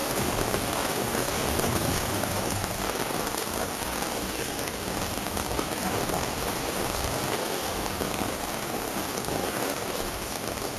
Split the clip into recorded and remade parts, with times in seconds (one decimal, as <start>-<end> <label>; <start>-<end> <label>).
0.0-10.8 remade

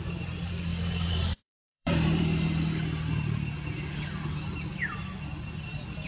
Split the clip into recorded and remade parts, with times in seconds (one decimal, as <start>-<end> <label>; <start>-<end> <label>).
0.0-0.7 recorded; 0.7-2.2 remade; 2.2-6.1 recorded